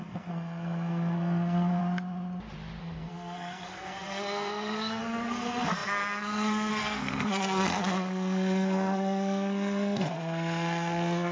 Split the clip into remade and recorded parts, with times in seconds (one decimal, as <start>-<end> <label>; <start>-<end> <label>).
0.0-1.8 remade; 1.8-2.8 recorded; 2.8-11.3 remade